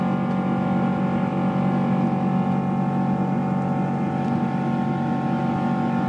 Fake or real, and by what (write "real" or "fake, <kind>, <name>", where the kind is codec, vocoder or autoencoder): real